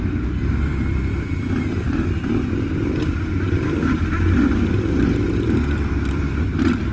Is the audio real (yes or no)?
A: no